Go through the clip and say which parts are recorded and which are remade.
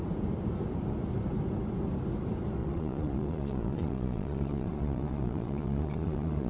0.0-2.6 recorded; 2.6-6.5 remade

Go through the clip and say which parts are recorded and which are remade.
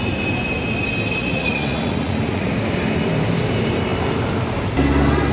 0.0-1.2 recorded; 1.2-2.5 remade; 2.5-5.3 recorded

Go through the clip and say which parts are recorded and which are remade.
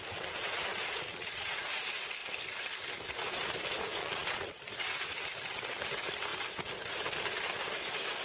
0.0-0.7 recorded; 0.7-1.7 remade; 1.7-4.0 recorded; 4.0-4.7 remade; 4.7-8.2 recorded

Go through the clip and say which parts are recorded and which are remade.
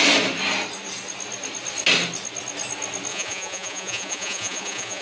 0.0-3.1 recorded; 3.1-5.0 remade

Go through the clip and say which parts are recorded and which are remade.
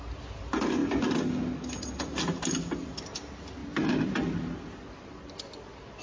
0.0-6.0 recorded